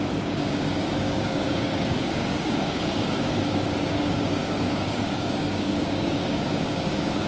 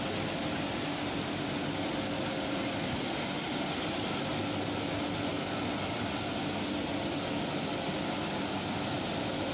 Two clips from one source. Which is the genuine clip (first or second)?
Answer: second